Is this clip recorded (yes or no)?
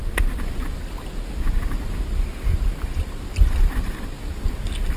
no